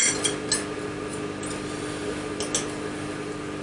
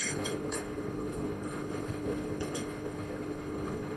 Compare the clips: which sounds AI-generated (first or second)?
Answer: second